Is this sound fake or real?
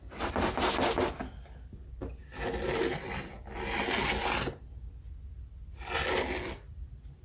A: real